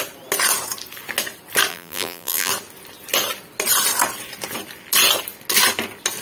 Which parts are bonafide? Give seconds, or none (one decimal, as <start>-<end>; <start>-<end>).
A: 0.0-1.7; 2.5-6.2